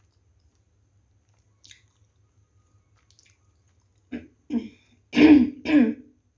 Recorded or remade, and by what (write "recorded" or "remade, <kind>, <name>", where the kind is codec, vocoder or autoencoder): recorded